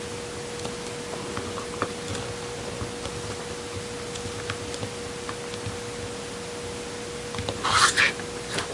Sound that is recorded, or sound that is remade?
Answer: recorded